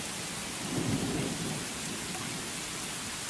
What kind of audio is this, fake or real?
real